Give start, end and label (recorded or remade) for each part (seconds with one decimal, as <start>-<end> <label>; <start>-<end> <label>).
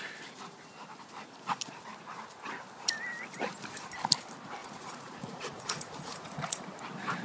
0.0-4.6 recorded; 4.6-6.6 remade; 6.6-7.2 recorded